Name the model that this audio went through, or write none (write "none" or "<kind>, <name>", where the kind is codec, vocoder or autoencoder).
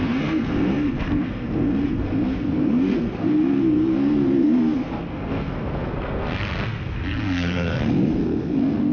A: codec, SNAC